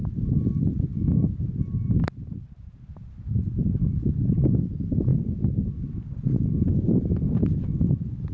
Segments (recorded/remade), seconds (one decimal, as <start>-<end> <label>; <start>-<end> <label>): 0.0-8.3 recorded